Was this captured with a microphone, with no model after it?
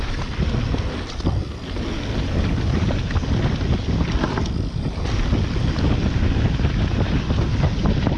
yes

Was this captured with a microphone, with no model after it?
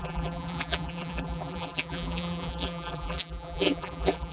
no